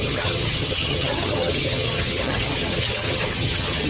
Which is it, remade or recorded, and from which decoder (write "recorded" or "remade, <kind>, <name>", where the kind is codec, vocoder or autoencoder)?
remade, vocoder, HiFi-GAN